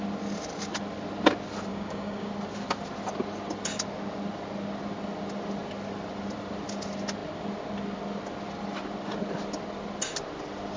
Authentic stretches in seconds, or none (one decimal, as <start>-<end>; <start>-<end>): 0.0-1.7; 2.3-10.8

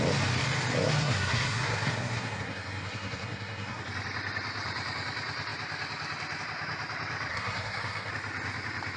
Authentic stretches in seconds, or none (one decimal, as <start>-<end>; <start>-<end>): 0.0-1.0; 3.8-7.3; 8.1-9.0

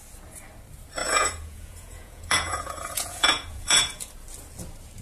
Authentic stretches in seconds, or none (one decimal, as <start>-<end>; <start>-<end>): 0.0-1.0; 4.0-5.0

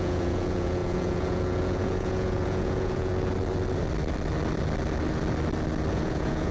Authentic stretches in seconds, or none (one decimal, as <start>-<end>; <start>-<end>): 3.1-5.9

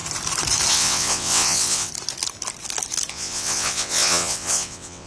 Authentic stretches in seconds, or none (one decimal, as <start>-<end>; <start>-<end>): 0.0-0.7; 1.9-3.1